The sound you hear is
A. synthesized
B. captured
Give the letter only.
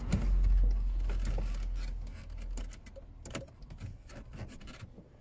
B